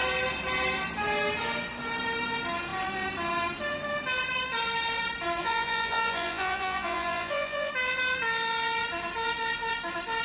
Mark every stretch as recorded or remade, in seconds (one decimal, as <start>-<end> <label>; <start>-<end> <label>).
0.0-5.4 recorded; 5.4-7.7 remade; 7.7-10.2 recorded